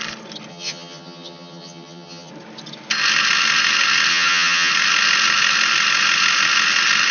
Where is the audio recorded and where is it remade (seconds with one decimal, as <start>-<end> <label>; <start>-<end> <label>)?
0.0-0.5 recorded; 0.5-2.3 remade; 2.3-4.1 recorded; 4.1-4.7 remade; 4.7-7.1 recorded